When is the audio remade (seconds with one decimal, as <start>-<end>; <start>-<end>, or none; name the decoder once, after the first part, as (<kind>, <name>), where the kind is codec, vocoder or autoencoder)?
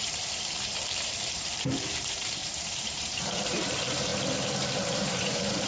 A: 0.0-4.1 (vocoder, BigVGAN v2); 4.9-5.7